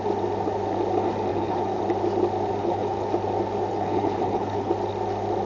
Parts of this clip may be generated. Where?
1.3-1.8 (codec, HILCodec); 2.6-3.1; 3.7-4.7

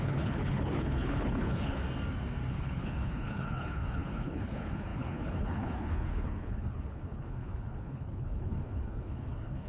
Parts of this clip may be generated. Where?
0.0-1.8 (codec, HILCodec); 2.5-9.7

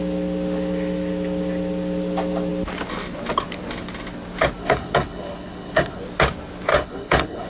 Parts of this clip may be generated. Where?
4.6-6.0 (codec, HILCodec); 6.7-7.5

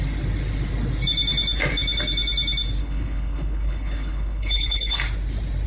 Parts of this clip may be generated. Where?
2.8-5.0 (codec, HILCodec)